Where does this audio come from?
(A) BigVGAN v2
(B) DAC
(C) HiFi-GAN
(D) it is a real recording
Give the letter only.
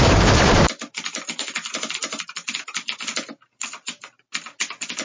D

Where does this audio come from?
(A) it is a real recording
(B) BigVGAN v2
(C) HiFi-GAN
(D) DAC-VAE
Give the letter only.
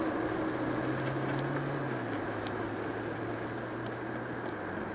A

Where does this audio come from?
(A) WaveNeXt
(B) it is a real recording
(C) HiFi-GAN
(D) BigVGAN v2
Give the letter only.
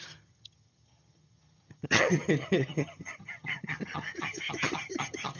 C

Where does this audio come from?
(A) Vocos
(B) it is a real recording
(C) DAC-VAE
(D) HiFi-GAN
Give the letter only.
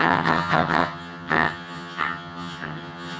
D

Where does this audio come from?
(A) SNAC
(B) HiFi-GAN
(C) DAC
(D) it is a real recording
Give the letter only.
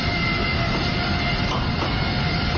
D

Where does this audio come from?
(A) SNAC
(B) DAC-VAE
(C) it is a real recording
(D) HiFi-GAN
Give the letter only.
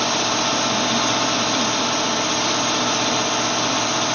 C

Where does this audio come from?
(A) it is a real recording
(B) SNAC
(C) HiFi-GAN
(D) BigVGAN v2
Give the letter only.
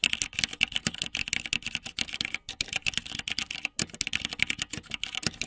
A